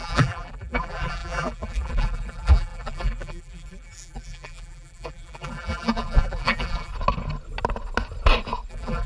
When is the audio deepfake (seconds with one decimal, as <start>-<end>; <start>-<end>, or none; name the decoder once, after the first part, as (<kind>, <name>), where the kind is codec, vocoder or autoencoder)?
0.0-6.9 (vocoder, BigVGAN v2); 8.7-9.1